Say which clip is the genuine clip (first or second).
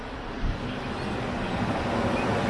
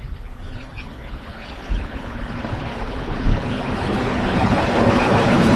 first